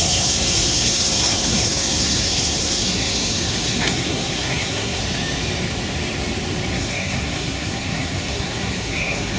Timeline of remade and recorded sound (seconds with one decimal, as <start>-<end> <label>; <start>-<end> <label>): 0.0-5.0 remade; 5.0-6.7 recorded; 6.7-9.4 remade